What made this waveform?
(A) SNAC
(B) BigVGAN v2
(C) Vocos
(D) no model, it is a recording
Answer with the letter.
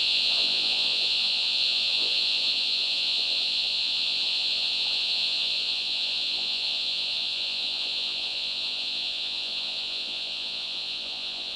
C